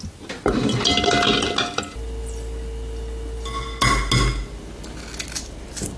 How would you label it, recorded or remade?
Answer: recorded